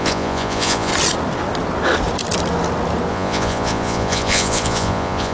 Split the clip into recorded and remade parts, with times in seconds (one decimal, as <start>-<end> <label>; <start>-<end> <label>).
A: 0.0-0.9 remade; 0.9-3.1 recorded; 3.1-5.3 remade